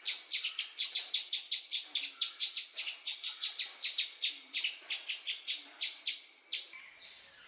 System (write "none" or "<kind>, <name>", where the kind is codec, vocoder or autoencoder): none